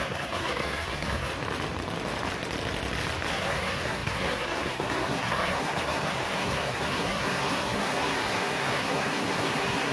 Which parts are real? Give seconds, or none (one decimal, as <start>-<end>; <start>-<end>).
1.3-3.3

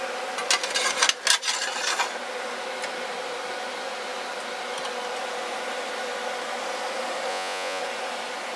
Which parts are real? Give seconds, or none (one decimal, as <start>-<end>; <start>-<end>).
0.0-7.3; 7.8-8.6

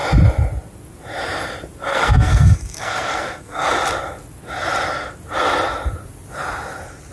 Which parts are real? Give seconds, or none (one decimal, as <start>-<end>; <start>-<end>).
0.0-1.9; 3.7-7.1

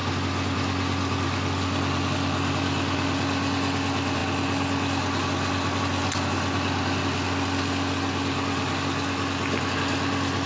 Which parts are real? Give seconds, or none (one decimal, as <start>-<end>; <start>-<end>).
0.0-10.5

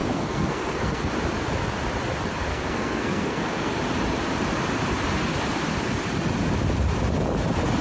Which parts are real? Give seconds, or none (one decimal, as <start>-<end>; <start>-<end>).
1.1-2.5; 3.7-7.8